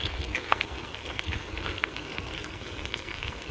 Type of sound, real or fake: fake